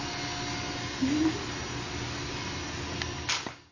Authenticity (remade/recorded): recorded